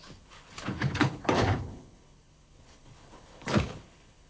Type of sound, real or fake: fake